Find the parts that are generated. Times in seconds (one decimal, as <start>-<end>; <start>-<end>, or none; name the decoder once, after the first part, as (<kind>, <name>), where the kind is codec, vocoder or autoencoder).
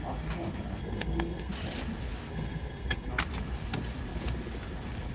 0.8-1.5 (codec, SNAC); 2.3-3.1